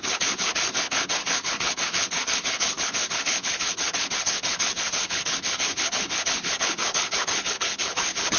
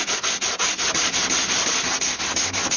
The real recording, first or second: second